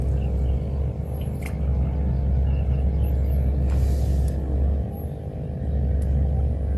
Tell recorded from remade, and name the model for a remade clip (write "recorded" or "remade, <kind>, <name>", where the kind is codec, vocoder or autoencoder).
recorded